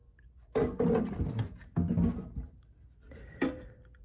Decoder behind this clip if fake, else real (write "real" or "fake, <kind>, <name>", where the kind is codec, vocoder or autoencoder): real